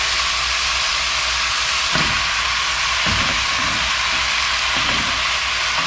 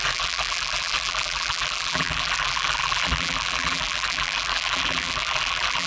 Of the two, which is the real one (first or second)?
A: first